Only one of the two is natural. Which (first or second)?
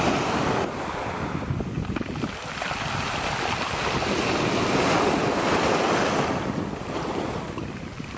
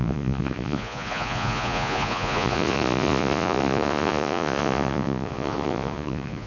first